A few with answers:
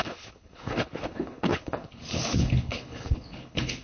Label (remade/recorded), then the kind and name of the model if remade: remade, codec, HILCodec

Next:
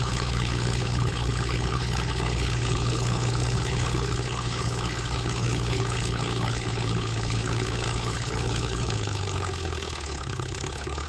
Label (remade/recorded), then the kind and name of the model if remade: remade, codec, HILCodec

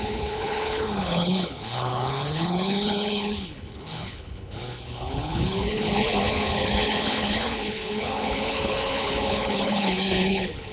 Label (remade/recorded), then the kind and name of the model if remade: remade, codec, HILCodec